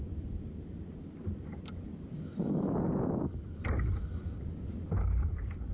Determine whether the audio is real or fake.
real